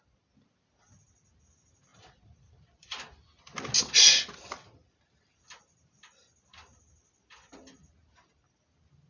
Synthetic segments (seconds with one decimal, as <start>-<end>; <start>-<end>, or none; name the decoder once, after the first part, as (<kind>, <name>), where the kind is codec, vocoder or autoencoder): none